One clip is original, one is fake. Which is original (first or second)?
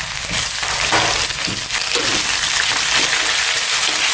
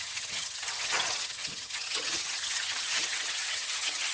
first